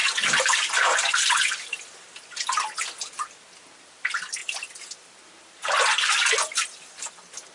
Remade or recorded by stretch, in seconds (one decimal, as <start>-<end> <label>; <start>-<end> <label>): 0.0-2.8 remade; 2.8-4.4 recorded; 4.4-7.1 remade; 7.1-7.5 recorded